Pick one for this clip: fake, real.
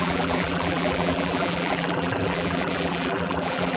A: fake